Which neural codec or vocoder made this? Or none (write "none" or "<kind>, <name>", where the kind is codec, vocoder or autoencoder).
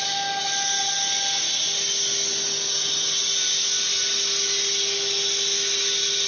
none